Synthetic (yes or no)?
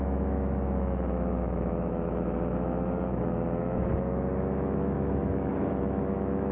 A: yes